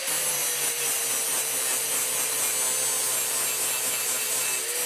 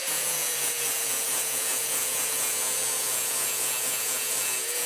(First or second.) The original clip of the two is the first